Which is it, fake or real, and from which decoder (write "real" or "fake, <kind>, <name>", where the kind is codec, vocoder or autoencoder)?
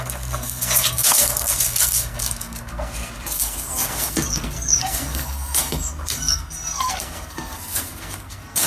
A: fake, codec, SNAC